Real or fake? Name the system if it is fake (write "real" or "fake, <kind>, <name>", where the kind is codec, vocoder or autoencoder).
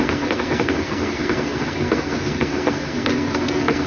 fake, codec, SNAC